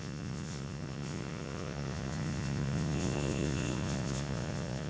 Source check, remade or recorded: remade